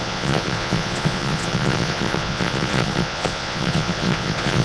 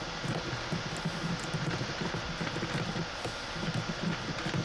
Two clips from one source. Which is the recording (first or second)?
second